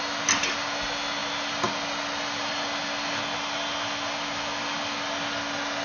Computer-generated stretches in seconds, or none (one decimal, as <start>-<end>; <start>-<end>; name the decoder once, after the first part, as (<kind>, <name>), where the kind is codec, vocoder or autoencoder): none